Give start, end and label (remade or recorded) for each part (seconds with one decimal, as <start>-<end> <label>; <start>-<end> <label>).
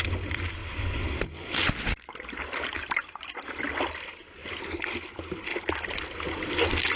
0.0-7.0 recorded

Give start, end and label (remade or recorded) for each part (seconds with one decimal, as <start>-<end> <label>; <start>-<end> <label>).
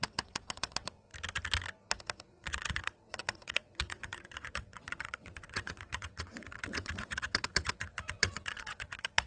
0.0-1.1 remade; 1.1-2.3 recorded; 2.3-9.3 remade